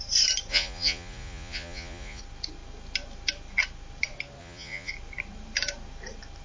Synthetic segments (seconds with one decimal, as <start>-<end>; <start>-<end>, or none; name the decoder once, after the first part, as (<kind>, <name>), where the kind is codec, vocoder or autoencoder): 0.5-2.2 (vocoder, Vocos); 4.4-4.9